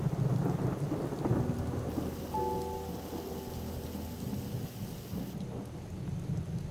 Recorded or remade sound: recorded